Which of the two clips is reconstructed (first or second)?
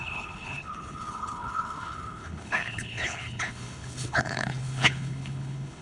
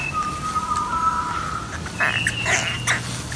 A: first